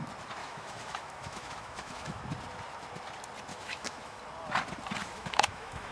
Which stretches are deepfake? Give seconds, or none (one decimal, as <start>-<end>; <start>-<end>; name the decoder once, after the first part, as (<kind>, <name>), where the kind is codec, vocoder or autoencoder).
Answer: 0.4-2.2 (autoencoder, DAC-VAE); 3.5-4.2; 5.0-5.9